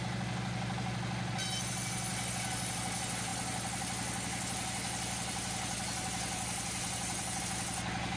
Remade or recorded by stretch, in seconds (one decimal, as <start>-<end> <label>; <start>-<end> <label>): 0.0-8.2 recorded